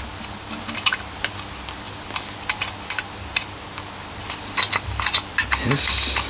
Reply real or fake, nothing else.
real